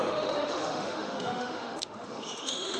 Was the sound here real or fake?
fake